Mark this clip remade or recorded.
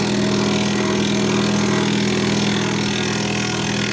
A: recorded